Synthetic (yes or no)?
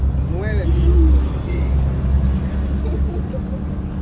no